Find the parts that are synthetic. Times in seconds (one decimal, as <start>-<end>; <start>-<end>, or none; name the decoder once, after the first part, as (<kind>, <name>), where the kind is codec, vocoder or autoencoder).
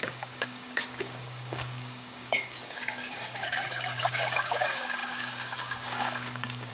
0.0-6.7 (codec, DAC)